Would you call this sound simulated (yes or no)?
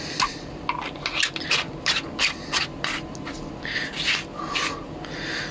no